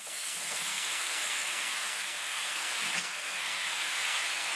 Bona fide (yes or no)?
no